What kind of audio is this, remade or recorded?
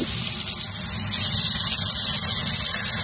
recorded